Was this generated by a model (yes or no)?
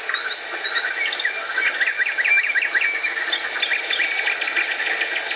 no